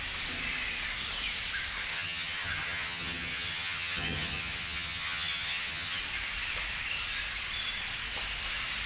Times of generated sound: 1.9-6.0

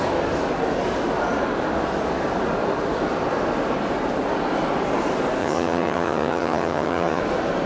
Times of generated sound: 5.4-7.2

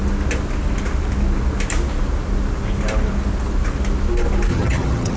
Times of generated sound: 4.5-5.2